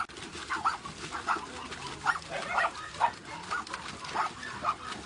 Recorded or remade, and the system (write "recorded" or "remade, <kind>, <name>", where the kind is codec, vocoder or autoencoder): recorded